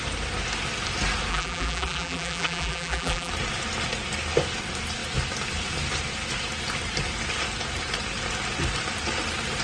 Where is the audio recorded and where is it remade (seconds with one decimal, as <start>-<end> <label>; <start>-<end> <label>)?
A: 0.0-1.3 recorded; 1.3-3.3 remade; 3.3-9.6 recorded